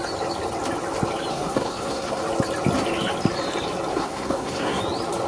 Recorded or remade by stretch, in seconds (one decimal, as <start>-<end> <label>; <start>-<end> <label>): 0.0-1.3 recorded; 1.3-2.2 remade; 2.2-3.9 recorded; 3.9-4.8 remade; 4.8-5.3 recorded